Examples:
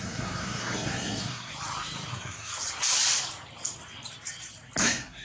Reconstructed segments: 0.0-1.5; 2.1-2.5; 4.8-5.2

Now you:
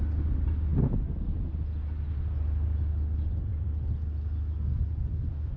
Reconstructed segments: none

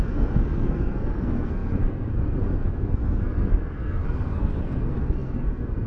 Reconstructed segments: 0.0-5.9

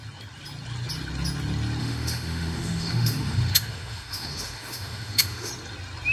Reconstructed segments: 1.8-5.5

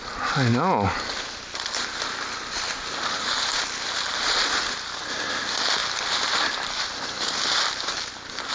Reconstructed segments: none